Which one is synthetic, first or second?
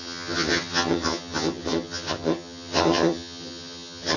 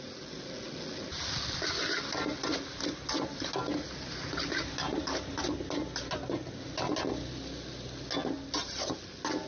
first